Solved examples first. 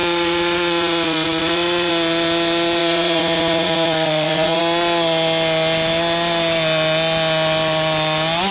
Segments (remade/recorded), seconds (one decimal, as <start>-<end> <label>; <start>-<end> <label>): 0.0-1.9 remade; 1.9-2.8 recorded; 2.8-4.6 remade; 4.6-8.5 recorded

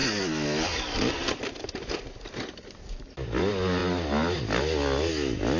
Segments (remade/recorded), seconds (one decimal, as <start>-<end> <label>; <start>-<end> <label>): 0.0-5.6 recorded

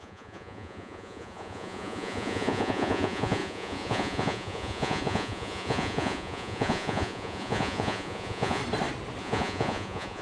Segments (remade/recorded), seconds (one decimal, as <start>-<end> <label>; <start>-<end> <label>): 0.0-8.6 remade; 8.6-9.2 recorded; 9.2-10.2 remade

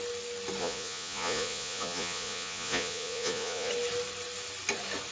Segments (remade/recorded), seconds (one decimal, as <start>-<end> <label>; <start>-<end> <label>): 0.0-0.6 recorded; 0.6-3.7 remade; 3.7-5.1 recorded

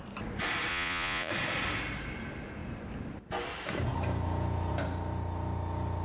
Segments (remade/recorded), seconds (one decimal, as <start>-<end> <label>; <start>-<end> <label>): 0.0-0.7 recorded; 0.7-1.3 remade; 1.3-6.0 recorded